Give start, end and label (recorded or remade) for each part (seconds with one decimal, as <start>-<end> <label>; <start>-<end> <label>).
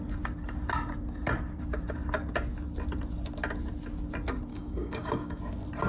0.0-4.5 recorded; 4.5-5.4 remade; 5.4-5.9 recorded